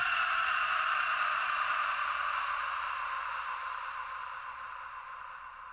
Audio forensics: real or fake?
real